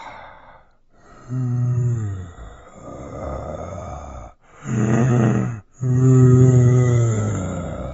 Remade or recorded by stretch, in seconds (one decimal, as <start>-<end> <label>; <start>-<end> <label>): 0.0-5.0 recorded; 5.0-7.3 remade; 7.3-7.9 recorded